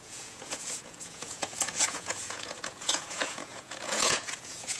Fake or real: fake